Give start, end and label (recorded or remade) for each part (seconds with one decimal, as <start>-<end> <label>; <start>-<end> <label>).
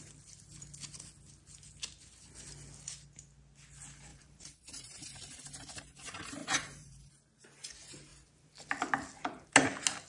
0.0-4.1 recorded; 4.1-5.1 remade; 5.1-6.4 recorded; 6.4-7.1 remade; 7.1-10.1 recorded